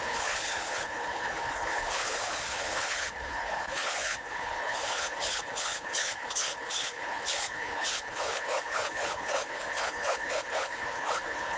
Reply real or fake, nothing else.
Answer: fake